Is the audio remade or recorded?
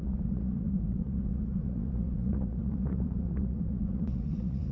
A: remade